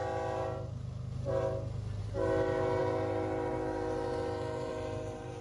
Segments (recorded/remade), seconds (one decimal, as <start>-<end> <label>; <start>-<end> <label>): 0.0-5.4 recorded